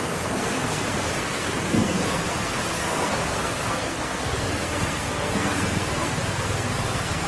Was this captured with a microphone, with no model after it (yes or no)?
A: no